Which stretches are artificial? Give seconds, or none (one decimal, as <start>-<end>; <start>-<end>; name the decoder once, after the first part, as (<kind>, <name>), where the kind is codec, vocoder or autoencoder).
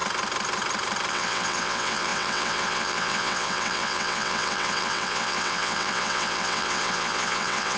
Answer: 1.1-7.8 (vocoder, WaveNeXt)